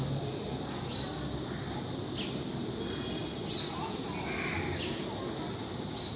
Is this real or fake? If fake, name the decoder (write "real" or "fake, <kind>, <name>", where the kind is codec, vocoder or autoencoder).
real